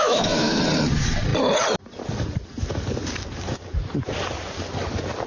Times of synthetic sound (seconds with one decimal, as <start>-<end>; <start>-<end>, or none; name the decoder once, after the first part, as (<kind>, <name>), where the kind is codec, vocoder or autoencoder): 0.0-0.6 (autoencoder, DAC-VAE)